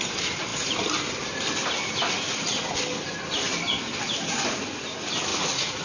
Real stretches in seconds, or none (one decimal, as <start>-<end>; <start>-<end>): 0.0-5.3